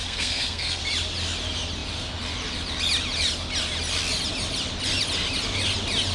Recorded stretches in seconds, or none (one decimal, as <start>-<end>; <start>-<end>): 0.8-6.1